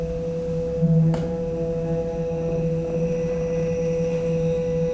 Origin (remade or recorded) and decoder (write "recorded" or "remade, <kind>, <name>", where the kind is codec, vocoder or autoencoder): recorded